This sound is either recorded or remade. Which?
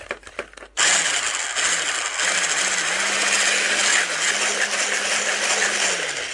recorded